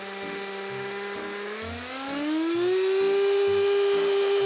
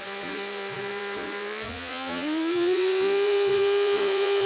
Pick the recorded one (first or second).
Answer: first